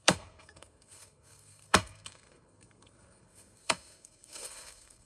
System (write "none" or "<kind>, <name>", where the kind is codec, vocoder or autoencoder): codec, SNAC